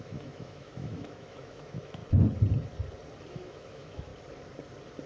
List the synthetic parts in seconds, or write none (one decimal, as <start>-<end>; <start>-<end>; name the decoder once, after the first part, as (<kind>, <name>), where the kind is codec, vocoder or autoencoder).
0.0-2.0 (autoencoder, DAC-VAE); 3.3-4.1